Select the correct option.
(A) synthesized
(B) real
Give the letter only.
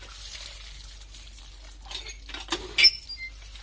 B